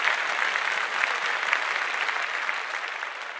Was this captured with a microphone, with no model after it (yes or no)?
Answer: yes